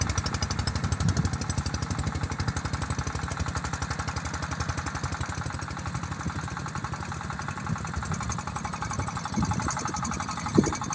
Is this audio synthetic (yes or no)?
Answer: no